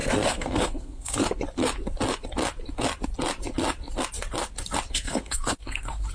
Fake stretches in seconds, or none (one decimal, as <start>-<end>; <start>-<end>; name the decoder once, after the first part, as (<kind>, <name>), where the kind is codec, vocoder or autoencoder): 0.0-1.2 (codec, SNAC); 4.9-6.1